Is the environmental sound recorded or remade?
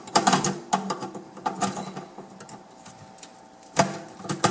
recorded